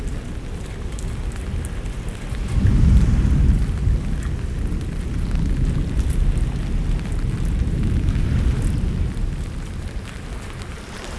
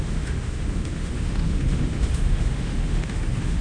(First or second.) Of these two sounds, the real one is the first